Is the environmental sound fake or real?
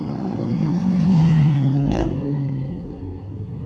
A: fake